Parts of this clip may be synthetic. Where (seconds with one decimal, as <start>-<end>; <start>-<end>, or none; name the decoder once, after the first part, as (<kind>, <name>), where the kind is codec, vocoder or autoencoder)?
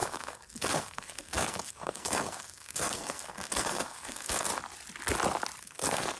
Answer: 0.0-4.5 (codec, SNAC); 5.6-6.2